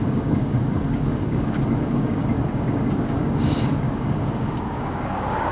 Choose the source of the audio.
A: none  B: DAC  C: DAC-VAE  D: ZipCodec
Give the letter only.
B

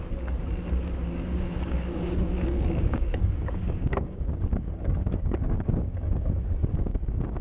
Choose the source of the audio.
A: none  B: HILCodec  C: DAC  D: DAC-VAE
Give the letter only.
C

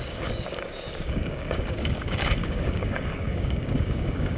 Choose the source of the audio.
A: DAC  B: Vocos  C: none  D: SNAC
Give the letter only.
A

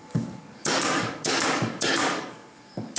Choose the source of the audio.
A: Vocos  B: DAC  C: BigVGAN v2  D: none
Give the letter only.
B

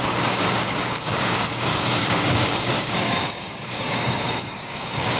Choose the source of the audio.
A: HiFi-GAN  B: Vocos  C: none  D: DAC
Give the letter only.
D